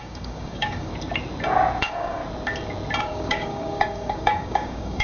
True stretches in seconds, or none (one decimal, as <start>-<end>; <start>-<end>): 0.9-1.8; 2.2-3.0